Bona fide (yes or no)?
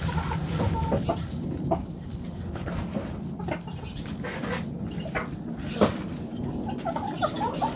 yes